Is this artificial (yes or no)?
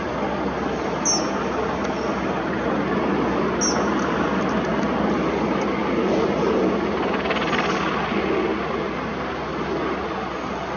no